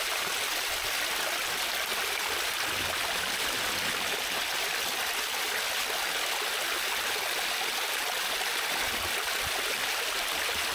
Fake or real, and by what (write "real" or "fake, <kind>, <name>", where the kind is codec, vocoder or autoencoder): real